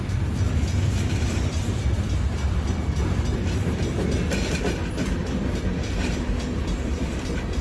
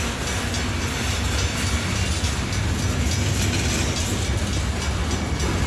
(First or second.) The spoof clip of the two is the first